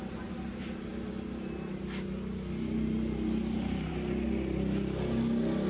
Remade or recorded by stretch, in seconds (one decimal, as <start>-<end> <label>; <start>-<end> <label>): 0.0-5.7 recorded